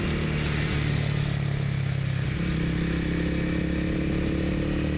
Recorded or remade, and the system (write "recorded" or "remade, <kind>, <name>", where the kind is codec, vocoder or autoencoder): recorded